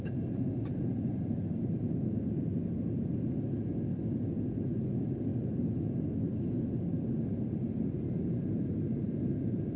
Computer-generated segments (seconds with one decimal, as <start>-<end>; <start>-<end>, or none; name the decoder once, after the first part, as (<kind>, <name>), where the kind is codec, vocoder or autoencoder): 0.0-2.6 (vocoder, BigVGAN v2); 4.6-5.3; 7.1-9.8